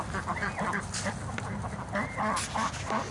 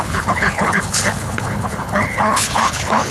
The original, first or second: first